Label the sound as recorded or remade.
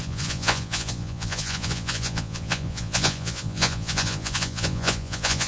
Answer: remade